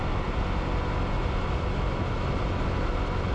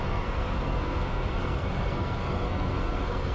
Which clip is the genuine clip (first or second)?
first